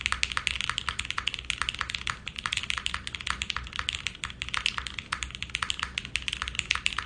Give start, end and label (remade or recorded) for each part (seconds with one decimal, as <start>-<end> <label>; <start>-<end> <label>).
0.0-7.1 recorded